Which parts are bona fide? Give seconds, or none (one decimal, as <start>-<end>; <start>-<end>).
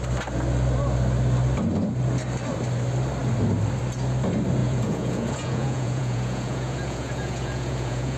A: 0.0-4.6